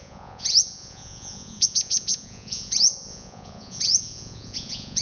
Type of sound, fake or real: fake